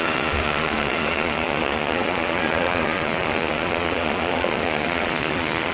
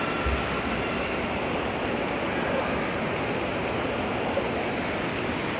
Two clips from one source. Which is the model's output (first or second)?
first